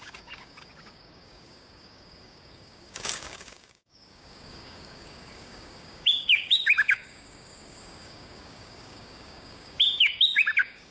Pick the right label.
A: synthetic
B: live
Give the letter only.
A